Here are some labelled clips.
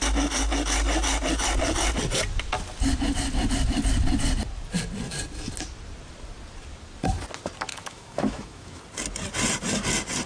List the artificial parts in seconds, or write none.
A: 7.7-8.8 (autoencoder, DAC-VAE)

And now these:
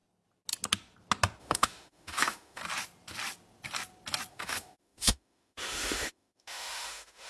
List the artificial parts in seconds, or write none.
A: 1.4-2.6 (autoencoder, DAC-VAE); 4.3-7.3

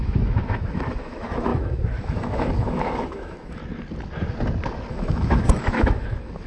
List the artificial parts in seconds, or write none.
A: 0.0-3.6 (autoencoder, DAC-VAE); 4.9-6.5